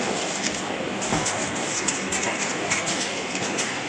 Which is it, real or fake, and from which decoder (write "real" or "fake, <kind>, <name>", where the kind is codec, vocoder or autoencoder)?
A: fake, codec, DAC